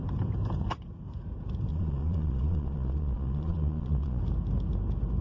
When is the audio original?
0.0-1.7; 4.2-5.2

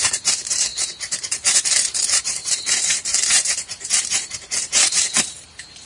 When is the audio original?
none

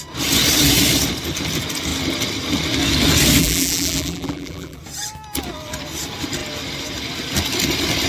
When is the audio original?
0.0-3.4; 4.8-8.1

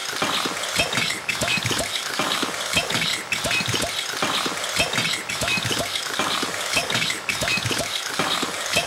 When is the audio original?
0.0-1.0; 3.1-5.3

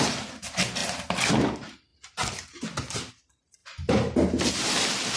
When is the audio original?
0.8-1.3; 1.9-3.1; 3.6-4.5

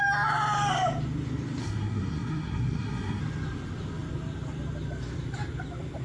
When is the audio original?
0.0-1.6; 3.2-6.0